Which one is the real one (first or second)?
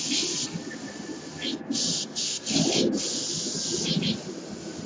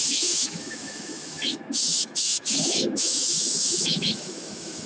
first